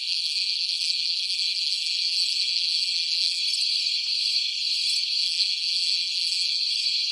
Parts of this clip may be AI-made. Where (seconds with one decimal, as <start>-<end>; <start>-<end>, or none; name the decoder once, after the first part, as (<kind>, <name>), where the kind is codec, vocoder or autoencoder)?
0.0-3.4 (vocoder, BigVGAN v2); 5.2-6.6